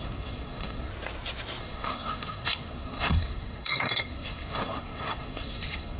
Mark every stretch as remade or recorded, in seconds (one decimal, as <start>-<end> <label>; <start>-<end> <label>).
0.0-0.9 remade; 0.9-1.6 recorded; 1.6-6.0 remade